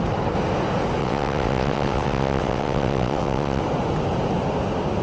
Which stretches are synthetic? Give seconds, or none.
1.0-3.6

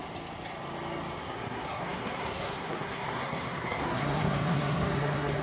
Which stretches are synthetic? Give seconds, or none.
1.2-5.4

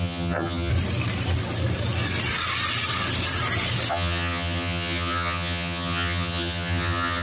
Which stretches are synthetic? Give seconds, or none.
0.0-0.7; 3.9-7.2

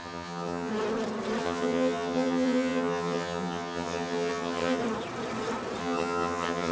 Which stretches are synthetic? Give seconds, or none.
0.0-0.7; 1.4-4.8; 5.8-6.7

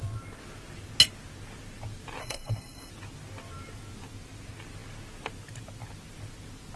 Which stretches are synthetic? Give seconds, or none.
2.2-2.9

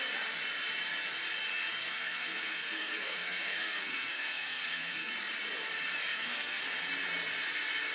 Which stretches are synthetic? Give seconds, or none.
1.8-5.1; 6.1-6.6

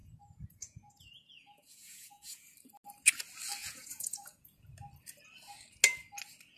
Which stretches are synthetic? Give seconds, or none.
0.0-2.4; 3.6-4.7